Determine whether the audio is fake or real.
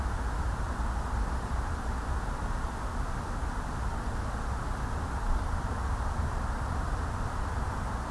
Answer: real